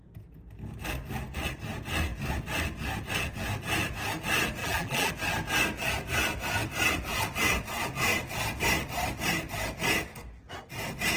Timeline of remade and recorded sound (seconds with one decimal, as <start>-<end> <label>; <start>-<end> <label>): 0.0-4.6 recorded; 4.6-5.1 remade; 5.1-11.2 recorded

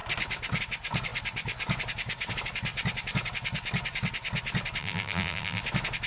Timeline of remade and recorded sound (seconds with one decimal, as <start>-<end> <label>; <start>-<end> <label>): 0.0-4.8 recorded; 4.8-5.6 remade; 5.6-6.1 recorded